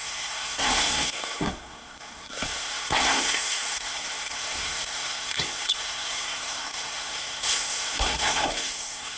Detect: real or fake fake